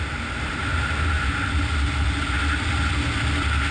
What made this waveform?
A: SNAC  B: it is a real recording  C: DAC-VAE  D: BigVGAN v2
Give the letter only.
B